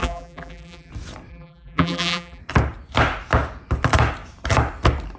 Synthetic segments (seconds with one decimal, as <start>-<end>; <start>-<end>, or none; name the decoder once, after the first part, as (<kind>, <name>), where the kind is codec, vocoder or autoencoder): 0.0-0.9 (vocoder, BigVGAN v2); 1.3-2.4